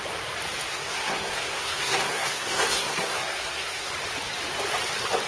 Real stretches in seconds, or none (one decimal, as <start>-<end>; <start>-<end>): 0.0-0.7; 3.9-5.3